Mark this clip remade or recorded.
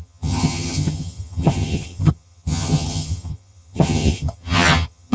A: remade